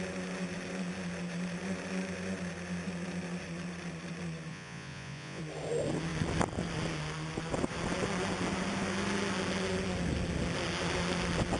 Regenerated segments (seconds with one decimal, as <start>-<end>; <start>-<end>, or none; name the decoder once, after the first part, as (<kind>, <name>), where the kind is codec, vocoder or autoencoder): 4.5-5.4 (vocoder, Vocos)